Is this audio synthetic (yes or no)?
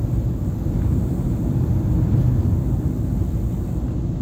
no